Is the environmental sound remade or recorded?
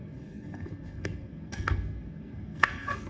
remade